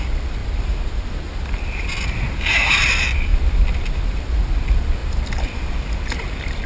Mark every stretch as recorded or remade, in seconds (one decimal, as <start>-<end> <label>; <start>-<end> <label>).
0.0-0.4 recorded; 0.4-1.1 remade; 1.1-5.0 recorded; 5.0-5.6 remade; 5.6-6.7 recorded